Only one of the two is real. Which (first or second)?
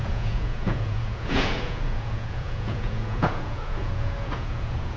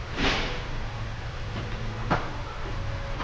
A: second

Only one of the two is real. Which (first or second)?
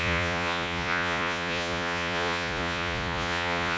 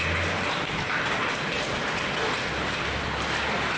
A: second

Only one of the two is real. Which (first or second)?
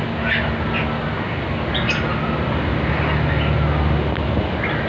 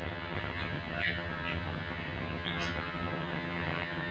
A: first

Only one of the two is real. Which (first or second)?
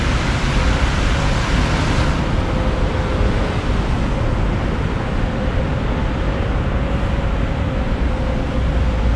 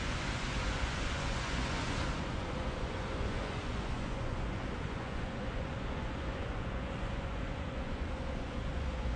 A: first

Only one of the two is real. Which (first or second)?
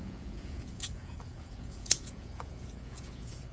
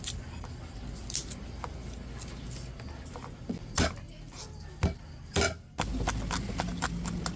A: second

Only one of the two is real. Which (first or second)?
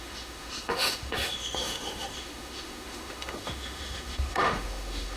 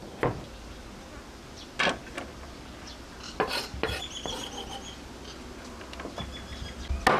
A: second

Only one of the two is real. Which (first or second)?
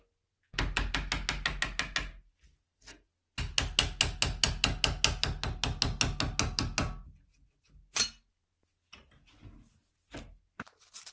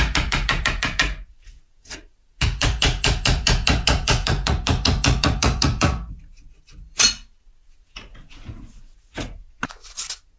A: first